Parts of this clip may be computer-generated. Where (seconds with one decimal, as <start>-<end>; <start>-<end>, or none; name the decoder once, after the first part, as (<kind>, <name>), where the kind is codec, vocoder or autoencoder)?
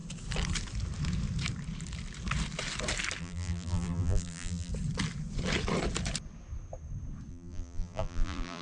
3.2-4.7 (vocoder, BigVGAN v2); 7.3-8.6